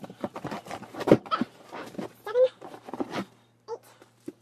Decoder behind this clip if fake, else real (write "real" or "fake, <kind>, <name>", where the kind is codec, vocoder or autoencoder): fake, vocoder, BigVGAN v2